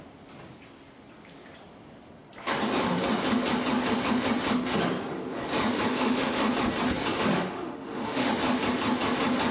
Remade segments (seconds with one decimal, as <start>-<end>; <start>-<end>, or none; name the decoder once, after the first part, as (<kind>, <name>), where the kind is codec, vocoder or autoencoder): 5.9-6.5 (autoencoder, DAC-VAE); 7.3-8.3